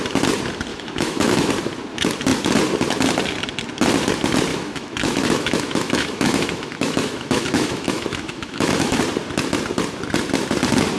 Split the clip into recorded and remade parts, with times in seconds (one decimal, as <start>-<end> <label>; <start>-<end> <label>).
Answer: 0.0-0.7 recorded; 0.7-1.5 remade; 1.5-4.5 recorded; 4.5-9.0 remade; 9.0-11.0 recorded